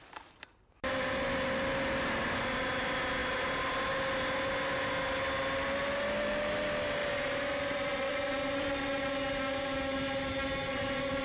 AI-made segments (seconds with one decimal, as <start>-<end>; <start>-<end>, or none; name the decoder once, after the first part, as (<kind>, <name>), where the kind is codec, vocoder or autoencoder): 7.0-8.1 (vocoder, BigVGAN v2)